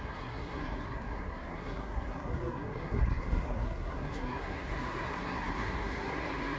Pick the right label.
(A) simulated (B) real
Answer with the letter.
A